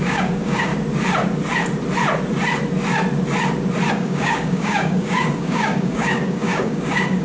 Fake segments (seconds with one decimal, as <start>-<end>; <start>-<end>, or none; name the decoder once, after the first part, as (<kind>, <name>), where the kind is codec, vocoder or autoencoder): 0.0-0.7 (codec, DAC); 3.9-7.2